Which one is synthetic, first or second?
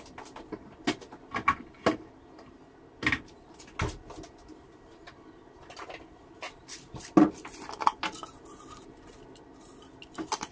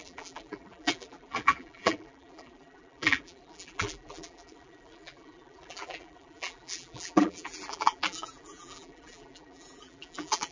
second